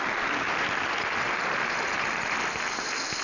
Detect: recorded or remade recorded